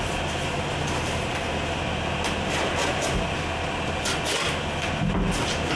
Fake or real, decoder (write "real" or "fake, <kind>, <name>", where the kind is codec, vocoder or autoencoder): real